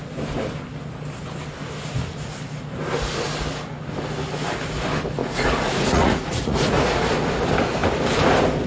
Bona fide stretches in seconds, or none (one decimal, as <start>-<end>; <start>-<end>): 0.0-5.2; 7.0-8.7